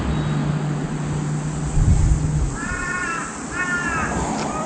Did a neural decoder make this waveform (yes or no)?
no